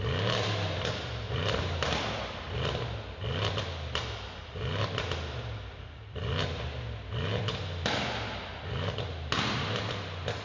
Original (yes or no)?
yes